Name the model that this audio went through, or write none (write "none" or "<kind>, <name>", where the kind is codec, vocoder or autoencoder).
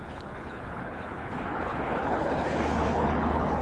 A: codec, HILCodec